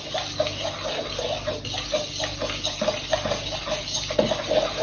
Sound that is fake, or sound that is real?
real